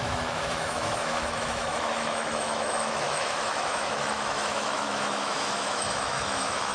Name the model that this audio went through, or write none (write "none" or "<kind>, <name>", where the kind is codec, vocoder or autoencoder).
autoencoder, DAC-VAE